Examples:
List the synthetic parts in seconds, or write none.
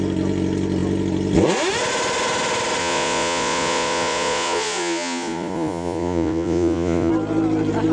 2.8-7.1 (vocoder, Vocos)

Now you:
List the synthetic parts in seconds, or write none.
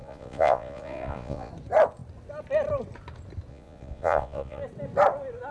0.0-1.5 (vocoder, Vocos); 3.5-4.6